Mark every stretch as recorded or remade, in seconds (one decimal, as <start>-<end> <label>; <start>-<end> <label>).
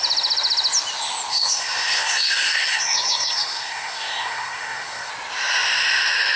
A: 0.0-1.3 recorded; 1.3-5.1 remade; 5.1-6.4 recorded